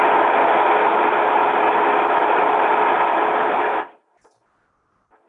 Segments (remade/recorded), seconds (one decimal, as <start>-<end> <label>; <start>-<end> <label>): 0.0-5.3 recorded